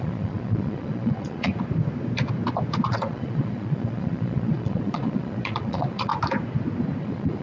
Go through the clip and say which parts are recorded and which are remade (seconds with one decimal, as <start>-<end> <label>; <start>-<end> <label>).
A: 0.0-1.5 remade; 1.5-2.9 recorded; 2.9-6.1 remade; 6.1-7.0 recorded; 7.0-7.4 remade